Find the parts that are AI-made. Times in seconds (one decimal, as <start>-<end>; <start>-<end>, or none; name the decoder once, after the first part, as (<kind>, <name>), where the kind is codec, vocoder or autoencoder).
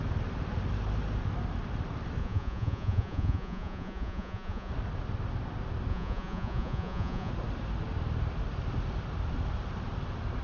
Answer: 2.2-4.7 (vocoder, Vocos); 5.9-7.3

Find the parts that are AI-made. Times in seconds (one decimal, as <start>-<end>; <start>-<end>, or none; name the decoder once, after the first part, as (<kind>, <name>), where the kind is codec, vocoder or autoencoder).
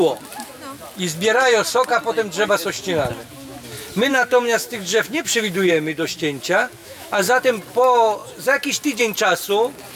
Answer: 4.1-5.7 (autoencoder, DAC-VAE); 6.8-7.4